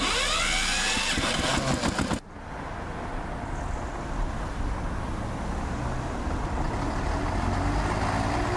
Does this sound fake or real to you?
real